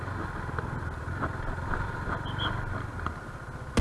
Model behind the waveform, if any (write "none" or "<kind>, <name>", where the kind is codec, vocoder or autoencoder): none